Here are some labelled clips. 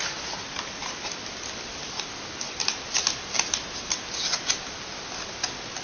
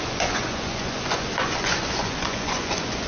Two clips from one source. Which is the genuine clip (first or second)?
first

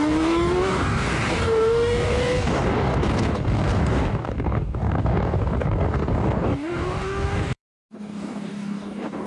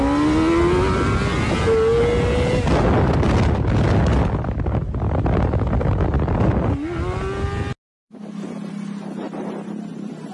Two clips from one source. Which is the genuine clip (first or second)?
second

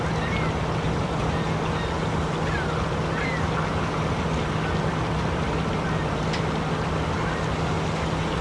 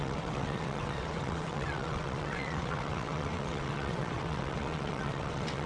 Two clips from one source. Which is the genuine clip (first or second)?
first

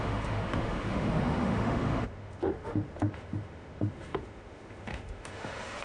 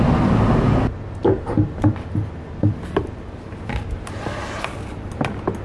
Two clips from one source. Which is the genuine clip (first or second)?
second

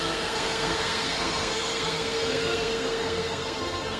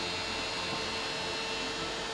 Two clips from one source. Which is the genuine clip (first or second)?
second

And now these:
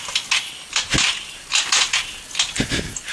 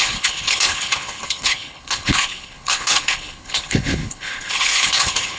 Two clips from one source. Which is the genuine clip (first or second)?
first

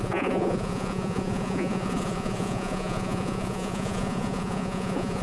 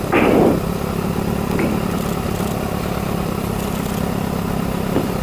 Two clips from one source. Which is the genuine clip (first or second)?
second